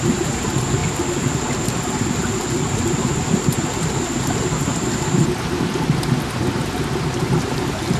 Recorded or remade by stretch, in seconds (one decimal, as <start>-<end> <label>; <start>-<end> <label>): 0.0-8.0 recorded

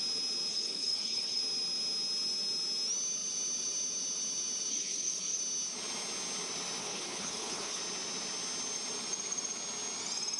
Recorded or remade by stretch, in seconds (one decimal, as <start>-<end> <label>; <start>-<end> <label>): 0.0-0.5 recorded; 0.5-1.4 remade; 1.4-4.7 recorded; 4.7-5.4 remade; 5.4-6.8 recorded; 6.8-7.8 remade; 7.8-10.4 recorded

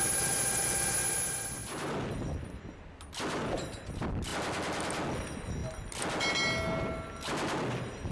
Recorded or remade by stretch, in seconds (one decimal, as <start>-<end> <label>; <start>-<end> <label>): 0.0-8.1 recorded